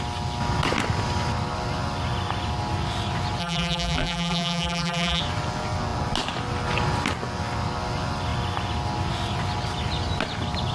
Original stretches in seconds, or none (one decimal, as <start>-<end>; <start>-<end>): 0.0-3.4; 5.2-10.7